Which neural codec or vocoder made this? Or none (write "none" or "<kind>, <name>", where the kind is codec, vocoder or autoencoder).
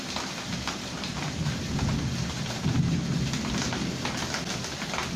none